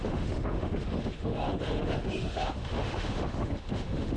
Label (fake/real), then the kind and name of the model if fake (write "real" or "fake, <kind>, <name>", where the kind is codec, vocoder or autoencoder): fake, autoencoder, DAC-VAE